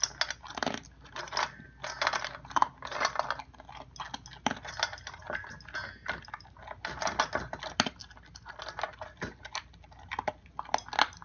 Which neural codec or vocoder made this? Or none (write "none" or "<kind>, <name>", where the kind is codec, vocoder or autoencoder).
none